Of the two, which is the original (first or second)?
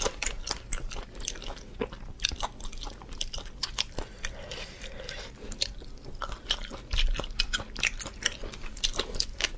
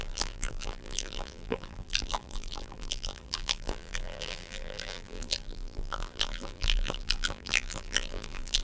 first